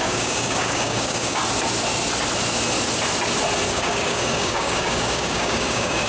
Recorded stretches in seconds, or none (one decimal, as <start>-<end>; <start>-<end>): 1.4-3.7